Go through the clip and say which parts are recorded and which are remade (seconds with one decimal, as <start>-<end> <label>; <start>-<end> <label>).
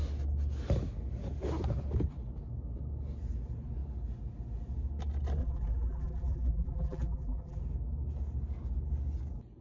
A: 0.0-5.4 recorded; 5.4-7.6 remade; 7.6-9.6 recorded